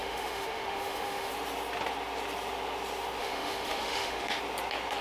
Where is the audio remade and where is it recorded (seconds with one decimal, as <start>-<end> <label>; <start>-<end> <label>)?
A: 0.0-1.3 remade; 1.3-3.2 recorded; 3.2-4.4 remade; 4.4-5.0 recorded

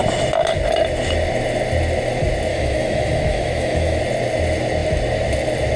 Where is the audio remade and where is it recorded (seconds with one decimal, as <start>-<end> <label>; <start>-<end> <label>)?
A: 0.0-2.5 recorded; 2.5-4.0 remade; 4.0-5.8 recorded

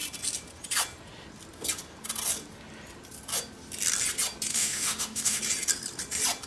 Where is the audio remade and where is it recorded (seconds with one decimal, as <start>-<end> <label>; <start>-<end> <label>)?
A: 0.0-4.5 recorded; 4.5-5.4 remade; 5.4-6.5 recorded

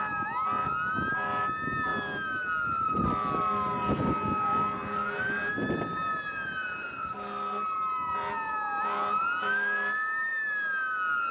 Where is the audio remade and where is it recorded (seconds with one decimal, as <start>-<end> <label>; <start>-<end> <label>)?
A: 0.0-11.3 recorded